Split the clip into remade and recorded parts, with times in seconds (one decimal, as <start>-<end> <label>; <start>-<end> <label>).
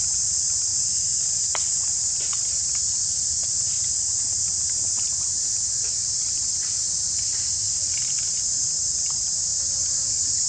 0.0-0.7 remade; 0.7-4.4 recorded; 4.4-6.2 remade; 6.2-8.0 recorded; 8.0-9.5 remade; 9.5-10.1 recorded; 10.1-10.5 remade